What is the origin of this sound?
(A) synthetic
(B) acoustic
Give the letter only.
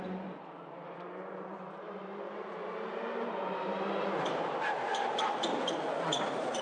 A